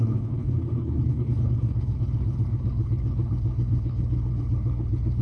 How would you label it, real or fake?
fake